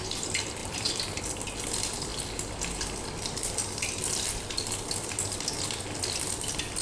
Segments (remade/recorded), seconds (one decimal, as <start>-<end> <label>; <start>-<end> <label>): 0.0-0.6 recorded; 0.6-1.2 remade; 1.2-6.8 recorded

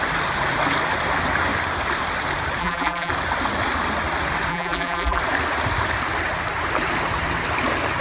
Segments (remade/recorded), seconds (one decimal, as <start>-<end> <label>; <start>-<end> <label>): 0.0-2.6 recorded; 2.6-3.1 remade; 3.1-4.5 recorded; 4.5-5.2 remade; 5.2-8.0 recorded

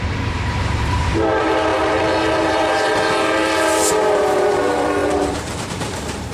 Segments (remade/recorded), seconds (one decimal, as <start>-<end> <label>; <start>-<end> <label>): 0.0-1.7 remade; 1.7-2.4 recorded; 2.4-6.3 remade

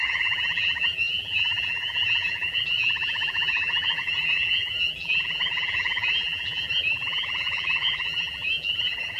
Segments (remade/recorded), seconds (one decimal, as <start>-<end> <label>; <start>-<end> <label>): 0.0-9.2 remade

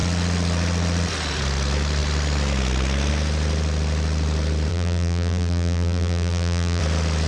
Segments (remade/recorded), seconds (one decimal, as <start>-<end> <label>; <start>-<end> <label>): 0.0-4.7 recorded; 4.7-6.8 remade; 6.8-7.3 recorded

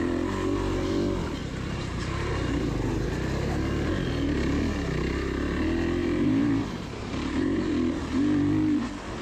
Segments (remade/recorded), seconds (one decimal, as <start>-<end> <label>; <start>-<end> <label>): 0.0-1.4 recorded; 1.4-2.3 remade; 2.3-6.0 recorded; 6.0-7.6 remade; 7.6-9.2 recorded

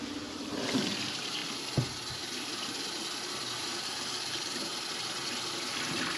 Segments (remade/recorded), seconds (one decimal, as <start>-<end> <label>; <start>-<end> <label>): 0.0-1.4 remade; 1.4-2.1 recorded; 2.1-2.5 remade; 2.5-3.3 recorded; 3.3-4.7 remade; 4.7-6.2 recorded